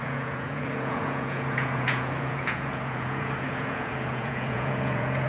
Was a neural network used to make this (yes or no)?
yes